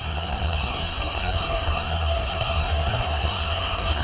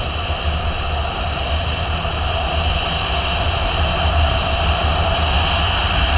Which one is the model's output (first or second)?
first